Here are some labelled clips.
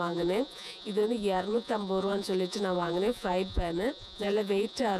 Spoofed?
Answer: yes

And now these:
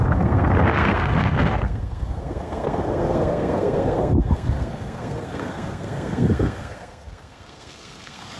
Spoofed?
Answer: yes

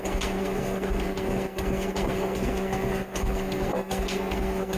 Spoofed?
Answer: yes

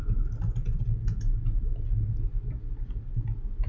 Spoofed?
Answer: no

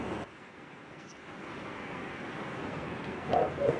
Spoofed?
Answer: yes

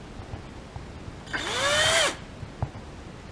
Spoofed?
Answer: no